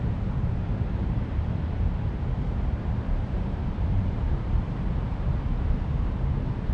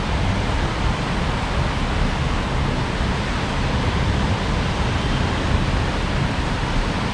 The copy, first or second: first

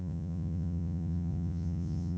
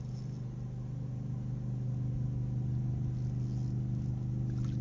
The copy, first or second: first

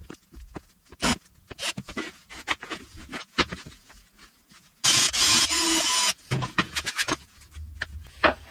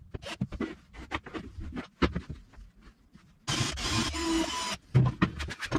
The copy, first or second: first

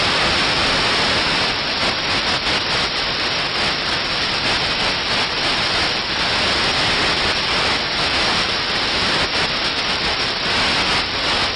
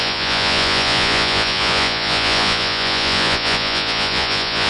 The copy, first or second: second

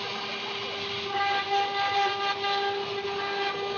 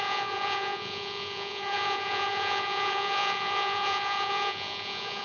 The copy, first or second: second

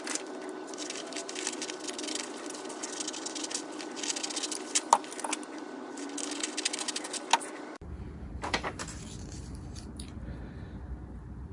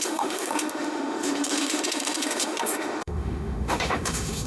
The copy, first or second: second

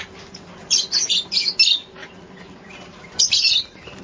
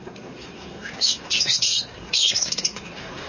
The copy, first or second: second